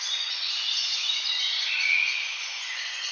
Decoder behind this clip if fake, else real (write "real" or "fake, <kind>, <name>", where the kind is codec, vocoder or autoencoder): fake, vocoder, Vocos